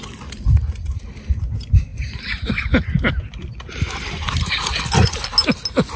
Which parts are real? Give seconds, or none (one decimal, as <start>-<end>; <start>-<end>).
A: 0.0-6.0